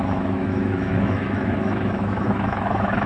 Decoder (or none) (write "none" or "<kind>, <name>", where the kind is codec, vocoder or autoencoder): autoencoder, DAC-VAE